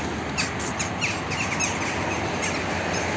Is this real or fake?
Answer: real